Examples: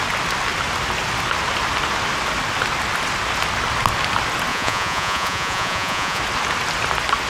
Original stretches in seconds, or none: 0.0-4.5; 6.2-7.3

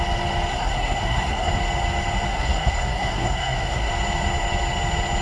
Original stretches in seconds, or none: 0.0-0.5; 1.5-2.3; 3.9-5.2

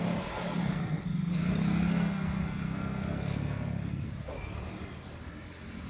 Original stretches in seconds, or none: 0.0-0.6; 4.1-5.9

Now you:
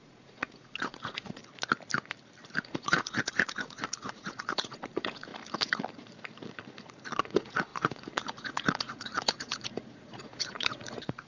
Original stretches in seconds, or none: 1.4-2.6; 5.3-7.2

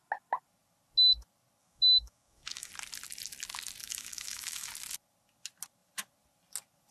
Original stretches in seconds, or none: 0.0-1.6; 2.7-3.8; 4.7-6.9

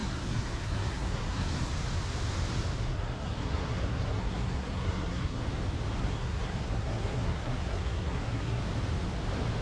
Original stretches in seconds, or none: 1.7-2.9; 5.4-6.0; 8.6-9.6